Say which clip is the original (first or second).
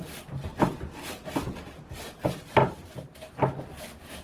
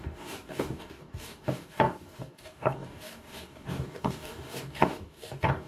first